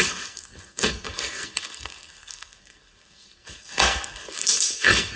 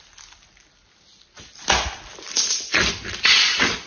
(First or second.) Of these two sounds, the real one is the second